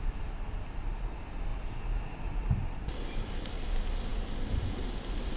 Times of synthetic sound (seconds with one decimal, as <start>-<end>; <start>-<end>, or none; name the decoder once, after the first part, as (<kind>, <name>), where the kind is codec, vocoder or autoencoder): none